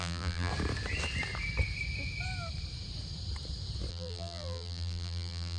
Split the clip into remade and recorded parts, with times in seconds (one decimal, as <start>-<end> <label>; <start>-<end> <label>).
0.0-0.5 remade; 0.5-3.9 recorded; 3.9-5.6 remade